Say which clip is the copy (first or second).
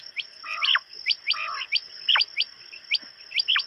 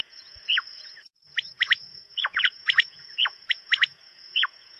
second